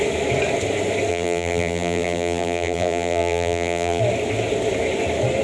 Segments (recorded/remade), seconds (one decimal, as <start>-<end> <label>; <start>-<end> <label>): 0.0-1.1 recorded; 1.1-4.0 remade; 4.0-5.4 recorded